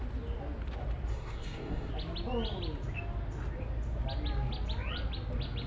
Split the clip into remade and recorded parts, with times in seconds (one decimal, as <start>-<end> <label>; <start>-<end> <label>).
0.0-1.1 recorded; 1.1-1.9 remade; 1.9-5.7 recorded